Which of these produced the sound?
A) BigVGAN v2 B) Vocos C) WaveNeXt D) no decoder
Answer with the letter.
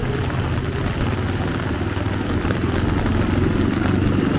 D